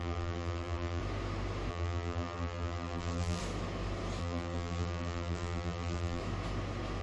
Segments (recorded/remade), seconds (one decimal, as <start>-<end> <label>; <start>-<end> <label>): 0.0-1.0 remade; 1.0-1.7 recorded; 1.7-3.4 remade; 3.4-4.2 recorded; 4.2-6.2 remade; 6.2-7.0 recorded